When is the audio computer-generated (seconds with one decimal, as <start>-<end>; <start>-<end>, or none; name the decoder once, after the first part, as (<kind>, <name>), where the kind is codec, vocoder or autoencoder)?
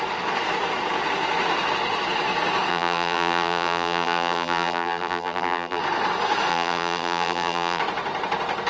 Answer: 2.7-5.8 (vocoder, BigVGAN v2); 6.5-7.8